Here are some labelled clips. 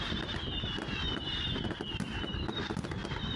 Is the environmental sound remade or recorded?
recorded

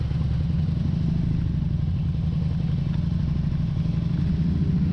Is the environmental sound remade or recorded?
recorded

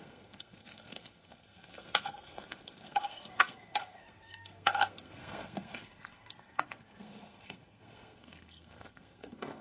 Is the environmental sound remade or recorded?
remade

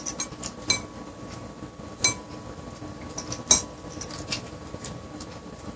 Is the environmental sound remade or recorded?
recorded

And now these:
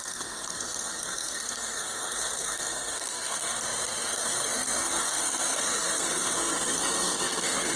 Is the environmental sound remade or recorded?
remade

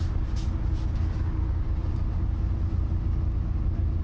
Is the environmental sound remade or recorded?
recorded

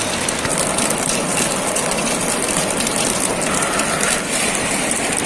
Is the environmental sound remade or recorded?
recorded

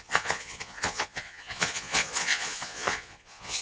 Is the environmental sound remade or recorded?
remade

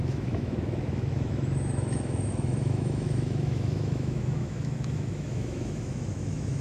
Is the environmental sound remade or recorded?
remade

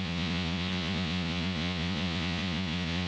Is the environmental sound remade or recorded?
remade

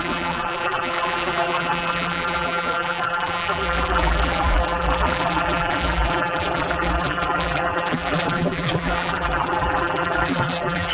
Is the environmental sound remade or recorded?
remade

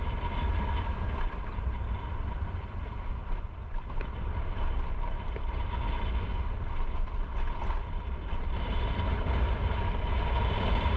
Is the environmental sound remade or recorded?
recorded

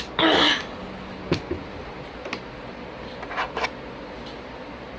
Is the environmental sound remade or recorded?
recorded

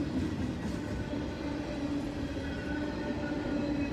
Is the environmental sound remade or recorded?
recorded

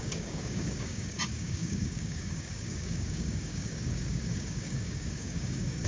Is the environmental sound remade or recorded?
remade